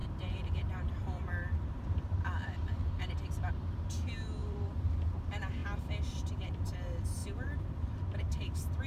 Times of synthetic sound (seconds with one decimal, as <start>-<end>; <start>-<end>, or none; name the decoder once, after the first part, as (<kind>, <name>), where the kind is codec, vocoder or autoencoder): 0.0-3.5 (vocoder, BigVGAN v2); 4.4-4.9